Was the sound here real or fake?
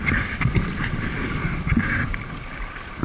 fake